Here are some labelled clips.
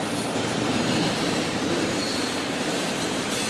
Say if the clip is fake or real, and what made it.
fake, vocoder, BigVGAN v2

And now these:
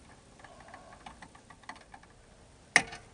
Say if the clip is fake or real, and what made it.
real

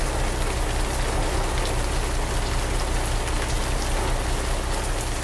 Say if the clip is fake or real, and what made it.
real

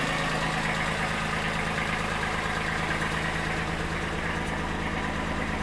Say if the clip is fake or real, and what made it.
real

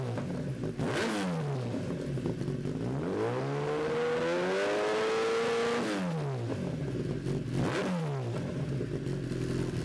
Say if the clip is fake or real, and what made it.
real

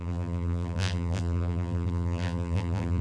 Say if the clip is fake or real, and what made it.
fake, vocoder, BigVGAN v2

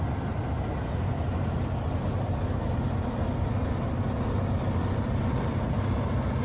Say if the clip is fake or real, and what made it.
real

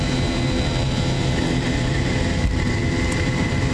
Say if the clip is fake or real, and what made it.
fake, vocoder, BigVGAN v2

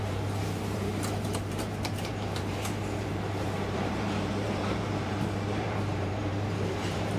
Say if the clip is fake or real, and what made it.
fake, vocoder, BigVGAN v2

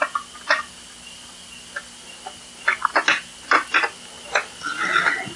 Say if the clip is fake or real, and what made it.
real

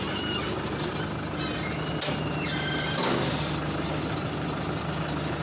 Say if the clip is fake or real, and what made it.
real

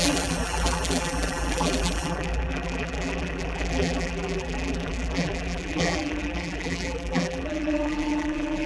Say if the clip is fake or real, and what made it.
fake, vocoder, BigVGAN v2